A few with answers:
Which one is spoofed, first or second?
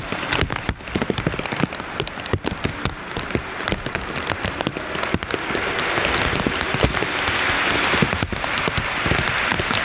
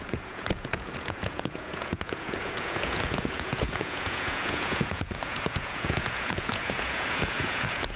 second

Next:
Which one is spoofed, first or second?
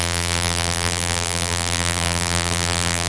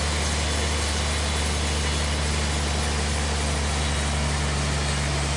first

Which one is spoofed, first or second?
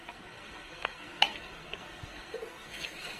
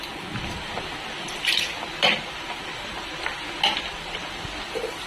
first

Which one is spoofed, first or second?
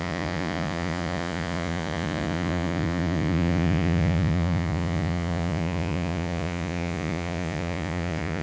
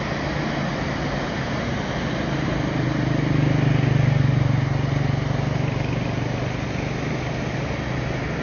first